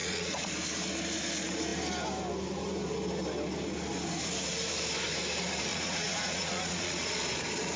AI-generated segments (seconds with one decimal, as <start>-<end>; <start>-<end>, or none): 0.0-0.5; 5.7-7.1